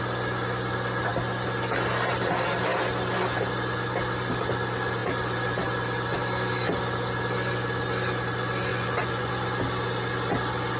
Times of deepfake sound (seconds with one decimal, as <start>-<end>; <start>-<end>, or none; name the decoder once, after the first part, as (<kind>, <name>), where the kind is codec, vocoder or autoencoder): 8.7-9.3 (vocoder, Vocos)